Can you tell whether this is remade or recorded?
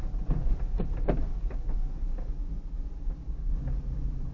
recorded